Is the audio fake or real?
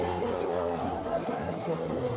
fake